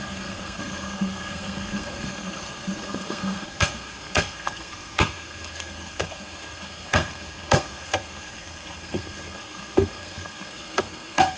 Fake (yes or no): yes